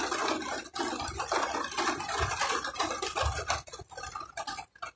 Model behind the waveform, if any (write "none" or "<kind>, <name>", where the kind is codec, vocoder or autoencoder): none